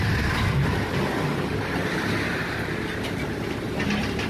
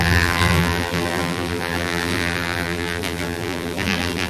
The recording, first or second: first